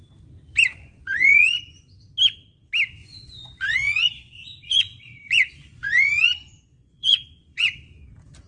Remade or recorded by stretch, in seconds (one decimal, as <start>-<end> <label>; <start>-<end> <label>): 0.0-0.7 recorded; 0.7-1.9 remade; 1.9-3.0 recorded; 3.0-8.1 remade; 8.1-8.5 recorded

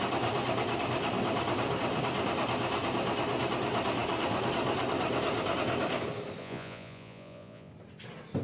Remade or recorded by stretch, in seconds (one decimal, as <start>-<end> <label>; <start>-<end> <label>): 0.0-6.4 recorded; 6.4-7.7 remade; 7.7-8.4 recorded

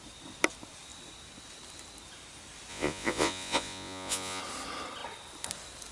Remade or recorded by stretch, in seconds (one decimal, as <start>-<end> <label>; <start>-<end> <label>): 0.0-2.7 recorded; 2.7-4.4 remade; 4.4-5.9 recorded